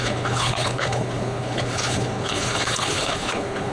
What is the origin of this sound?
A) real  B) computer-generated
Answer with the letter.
B